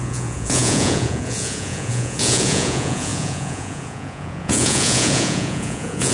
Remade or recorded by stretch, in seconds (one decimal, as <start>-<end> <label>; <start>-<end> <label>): 0.0-6.1 remade